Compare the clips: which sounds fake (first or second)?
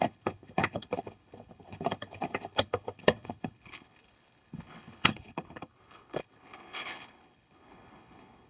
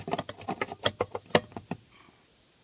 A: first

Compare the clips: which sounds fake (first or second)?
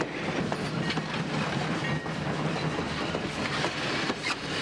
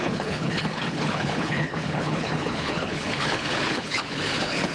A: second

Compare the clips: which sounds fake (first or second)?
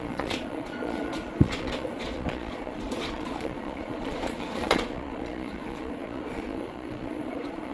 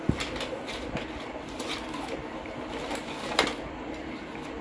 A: first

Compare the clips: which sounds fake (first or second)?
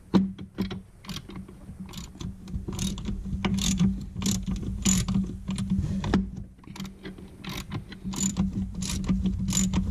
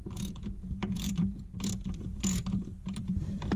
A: second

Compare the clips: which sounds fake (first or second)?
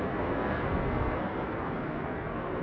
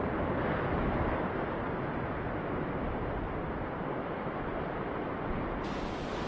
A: first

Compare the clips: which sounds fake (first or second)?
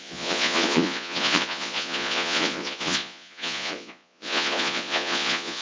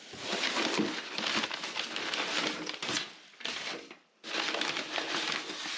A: first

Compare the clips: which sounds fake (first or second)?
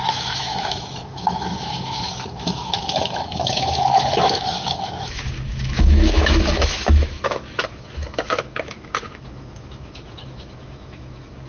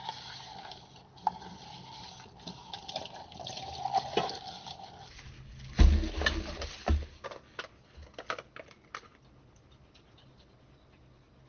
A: first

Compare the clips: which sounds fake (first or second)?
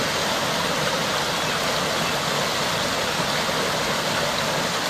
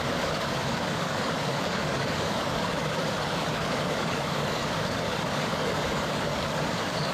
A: second